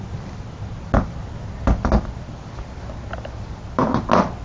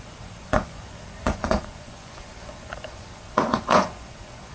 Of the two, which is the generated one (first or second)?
second